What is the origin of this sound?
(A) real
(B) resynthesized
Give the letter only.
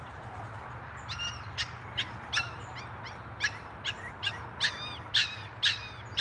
A